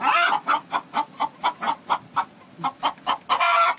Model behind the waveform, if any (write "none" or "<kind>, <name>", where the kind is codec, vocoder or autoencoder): none